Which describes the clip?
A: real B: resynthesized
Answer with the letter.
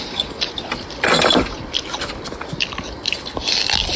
A